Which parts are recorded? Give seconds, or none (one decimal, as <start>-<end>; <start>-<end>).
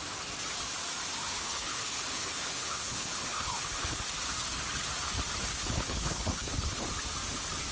0.0-1.2; 4.0-5.5; 6.8-7.7